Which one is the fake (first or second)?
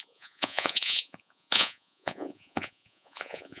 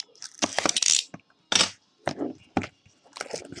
first